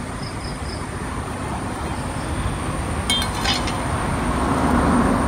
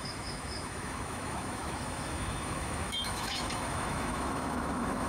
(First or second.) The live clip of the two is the first